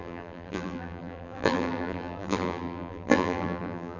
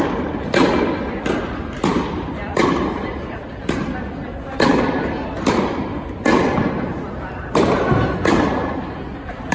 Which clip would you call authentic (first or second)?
second